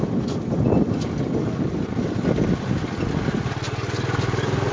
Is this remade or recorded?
recorded